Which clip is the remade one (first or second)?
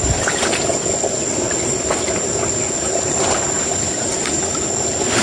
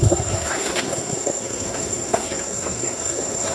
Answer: second